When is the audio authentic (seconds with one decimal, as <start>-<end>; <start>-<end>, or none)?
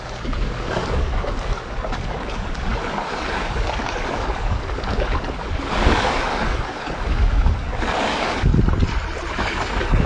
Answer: 8.5-9.3